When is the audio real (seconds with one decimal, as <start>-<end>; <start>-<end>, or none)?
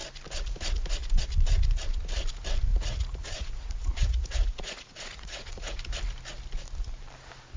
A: 0.0-2.7; 5.8-7.6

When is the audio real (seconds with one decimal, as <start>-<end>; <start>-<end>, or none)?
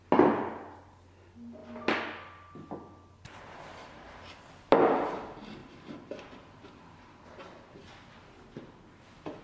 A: 0.0-5.6; 6.2-9.4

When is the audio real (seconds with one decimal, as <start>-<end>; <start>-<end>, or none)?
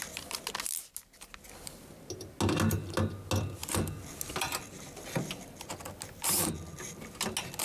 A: 0.0-7.6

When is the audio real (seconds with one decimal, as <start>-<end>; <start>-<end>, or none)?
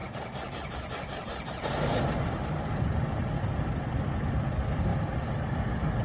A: 2.6-4.9; 5.6-6.0